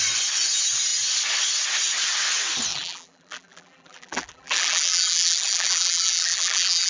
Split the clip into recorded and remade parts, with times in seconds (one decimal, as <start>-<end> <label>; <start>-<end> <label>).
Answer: 0.0-2.7 recorded; 2.7-6.9 remade